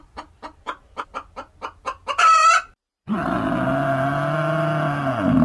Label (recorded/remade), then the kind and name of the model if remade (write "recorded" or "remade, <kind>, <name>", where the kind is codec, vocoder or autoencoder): recorded